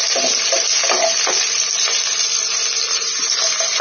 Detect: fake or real real